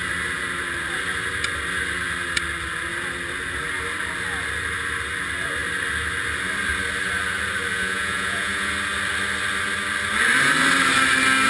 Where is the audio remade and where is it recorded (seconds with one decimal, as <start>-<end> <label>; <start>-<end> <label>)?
0.0-7.7 recorded; 7.7-8.7 remade; 8.7-11.5 recorded